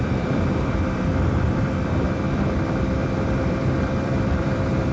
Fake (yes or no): yes